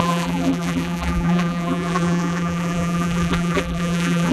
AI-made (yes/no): yes